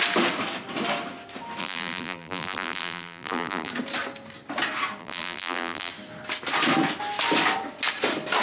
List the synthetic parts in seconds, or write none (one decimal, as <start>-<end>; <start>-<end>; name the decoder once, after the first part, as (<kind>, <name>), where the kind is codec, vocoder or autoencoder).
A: 1.6-3.7 (vocoder, BigVGAN v2); 5.0-5.9